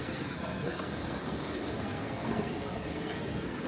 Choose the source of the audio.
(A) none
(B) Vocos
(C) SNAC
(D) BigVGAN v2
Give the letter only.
C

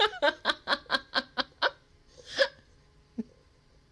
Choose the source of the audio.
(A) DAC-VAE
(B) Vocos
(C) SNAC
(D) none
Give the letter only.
D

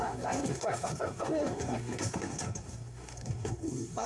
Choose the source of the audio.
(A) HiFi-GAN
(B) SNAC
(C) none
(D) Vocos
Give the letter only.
B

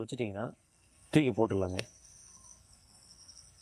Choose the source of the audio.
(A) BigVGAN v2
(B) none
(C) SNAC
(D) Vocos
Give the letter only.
C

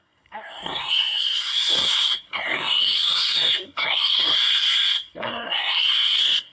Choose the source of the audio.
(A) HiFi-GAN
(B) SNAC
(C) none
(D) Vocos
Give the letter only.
B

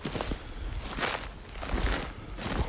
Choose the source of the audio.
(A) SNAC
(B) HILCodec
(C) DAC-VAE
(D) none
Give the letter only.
D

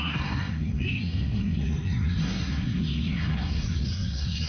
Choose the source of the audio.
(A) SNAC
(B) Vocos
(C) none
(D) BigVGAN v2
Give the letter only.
A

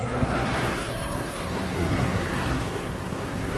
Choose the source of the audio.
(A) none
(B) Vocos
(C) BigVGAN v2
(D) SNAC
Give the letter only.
D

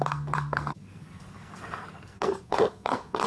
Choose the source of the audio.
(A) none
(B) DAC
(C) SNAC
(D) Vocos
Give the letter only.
C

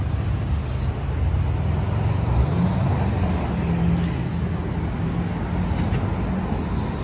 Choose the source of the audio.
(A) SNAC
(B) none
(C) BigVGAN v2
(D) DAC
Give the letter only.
B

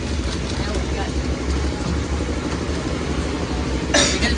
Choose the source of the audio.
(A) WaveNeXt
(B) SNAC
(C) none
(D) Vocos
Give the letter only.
C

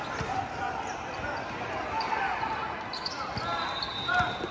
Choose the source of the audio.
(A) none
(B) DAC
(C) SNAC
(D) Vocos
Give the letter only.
A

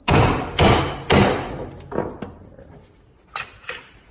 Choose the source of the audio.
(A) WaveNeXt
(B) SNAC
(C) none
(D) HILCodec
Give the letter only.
C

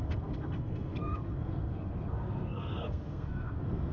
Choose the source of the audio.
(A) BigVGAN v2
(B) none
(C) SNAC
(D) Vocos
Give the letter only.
C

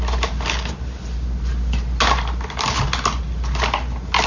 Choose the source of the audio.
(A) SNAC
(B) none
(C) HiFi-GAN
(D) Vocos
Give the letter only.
B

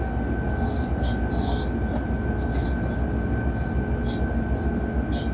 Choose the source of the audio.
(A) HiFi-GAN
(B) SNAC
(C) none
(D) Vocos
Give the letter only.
C